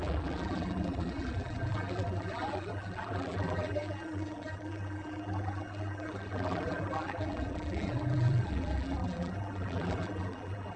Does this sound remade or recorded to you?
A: remade